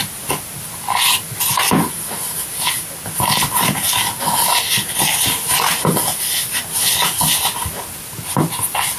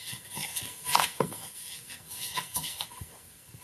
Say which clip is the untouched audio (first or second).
first